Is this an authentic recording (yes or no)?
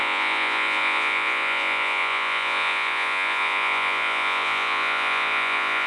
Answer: no